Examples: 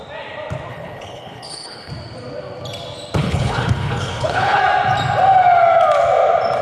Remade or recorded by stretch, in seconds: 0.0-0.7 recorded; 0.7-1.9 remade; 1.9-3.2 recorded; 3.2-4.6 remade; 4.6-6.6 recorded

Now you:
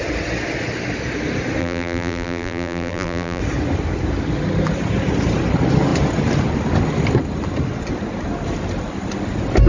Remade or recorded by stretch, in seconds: 0.0-1.6 recorded; 1.6-3.4 remade; 3.4-9.7 recorded

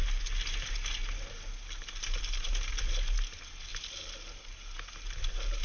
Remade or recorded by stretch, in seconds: 0.0-5.6 recorded

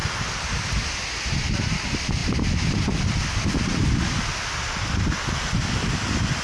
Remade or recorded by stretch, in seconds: 0.0-6.4 recorded

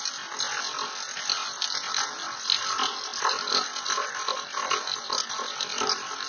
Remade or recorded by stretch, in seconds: 0.0-6.3 recorded

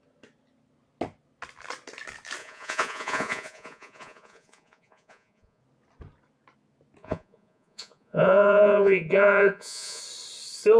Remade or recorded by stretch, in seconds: 0.0-2.4 recorded; 2.4-5.6 remade; 5.6-7.0 recorded; 7.0-10.0 remade; 10.0-10.8 recorded

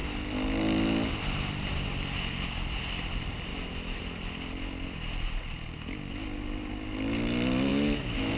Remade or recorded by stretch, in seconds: 0.0-3.5 recorded; 3.5-4.0 remade; 4.0-7.7 recorded; 7.7-8.4 remade